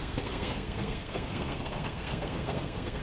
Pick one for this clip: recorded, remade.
remade